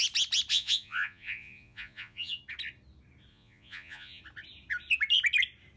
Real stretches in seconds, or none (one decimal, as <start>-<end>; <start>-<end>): 0.0-0.5; 2.4-3.3; 4.2-5.8